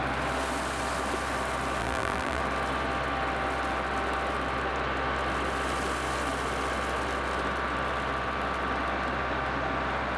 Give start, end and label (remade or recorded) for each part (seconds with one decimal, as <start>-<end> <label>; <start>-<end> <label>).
0.0-1.8 recorded; 1.8-2.4 remade; 2.4-10.2 recorded